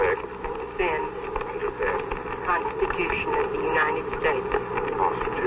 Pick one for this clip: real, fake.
real